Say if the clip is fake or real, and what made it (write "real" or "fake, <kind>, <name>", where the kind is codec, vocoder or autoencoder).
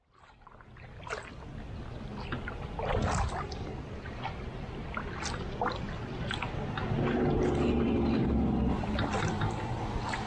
real